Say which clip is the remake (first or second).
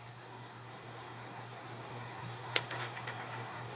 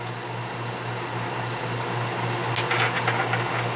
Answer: first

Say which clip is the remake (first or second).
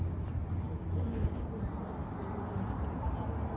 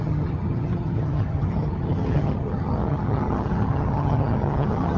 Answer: second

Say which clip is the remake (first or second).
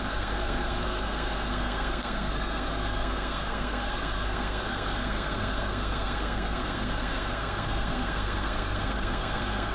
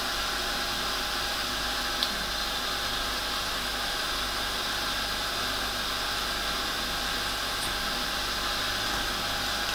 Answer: first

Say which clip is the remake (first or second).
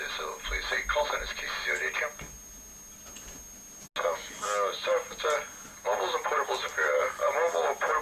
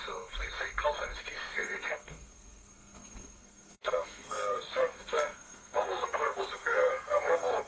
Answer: second